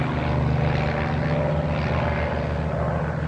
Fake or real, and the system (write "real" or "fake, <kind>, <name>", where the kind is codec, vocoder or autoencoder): real